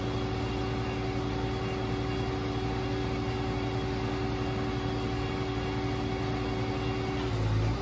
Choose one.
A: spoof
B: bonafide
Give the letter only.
B